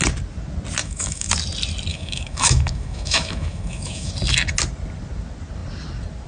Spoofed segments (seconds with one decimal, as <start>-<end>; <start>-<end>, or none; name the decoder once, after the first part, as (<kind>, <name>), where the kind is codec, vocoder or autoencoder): 0.8-1.3 (autoencoder, DAC-VAE); 1.9-4.1